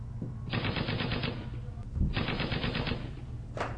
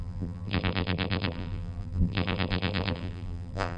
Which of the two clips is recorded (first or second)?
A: first